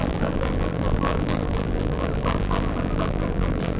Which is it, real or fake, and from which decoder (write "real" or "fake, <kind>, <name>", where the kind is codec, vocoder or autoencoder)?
fake, vocoder, BigVGAN v2